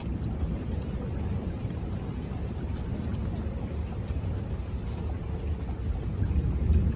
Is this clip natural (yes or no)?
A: yes